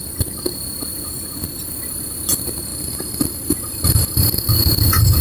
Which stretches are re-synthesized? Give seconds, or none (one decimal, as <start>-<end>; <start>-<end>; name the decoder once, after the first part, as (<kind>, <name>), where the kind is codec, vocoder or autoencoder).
none